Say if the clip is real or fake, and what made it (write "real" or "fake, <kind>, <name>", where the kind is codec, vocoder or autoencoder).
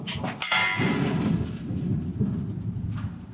real